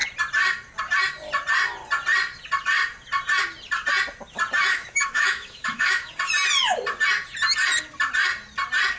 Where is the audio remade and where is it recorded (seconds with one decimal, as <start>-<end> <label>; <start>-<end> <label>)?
0.0-4.7 recorded; 4.7-6.1 remade; 6.1-9.0 recorded